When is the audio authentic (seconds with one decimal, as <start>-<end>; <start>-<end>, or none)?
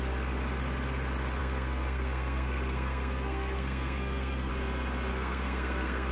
0.0-1.4; 4.5-5.1